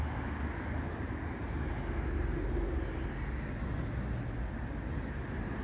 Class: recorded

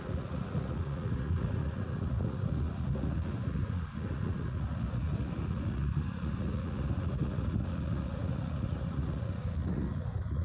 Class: remade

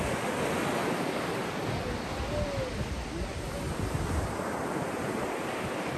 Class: recorded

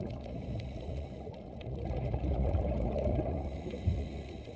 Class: remade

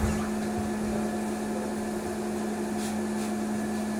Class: recorded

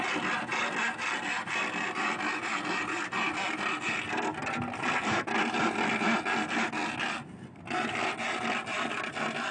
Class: recorded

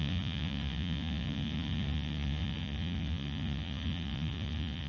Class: remade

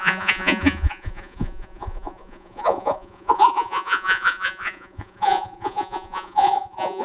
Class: remade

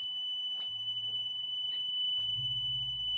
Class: recorded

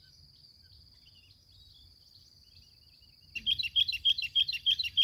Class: recorded